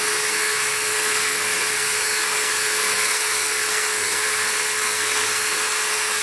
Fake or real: fake